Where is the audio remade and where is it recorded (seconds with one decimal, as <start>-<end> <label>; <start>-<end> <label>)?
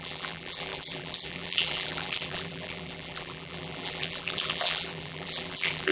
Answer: 0.0-5.9 remade